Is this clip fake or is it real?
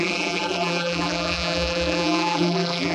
fake